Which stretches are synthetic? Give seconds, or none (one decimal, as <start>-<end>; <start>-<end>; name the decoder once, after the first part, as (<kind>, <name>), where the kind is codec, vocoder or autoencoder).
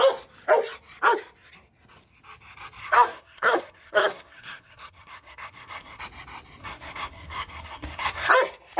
2.8-6.0 (codec, SNAC); 6.6-8.3